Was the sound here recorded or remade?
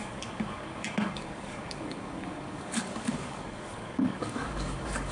remade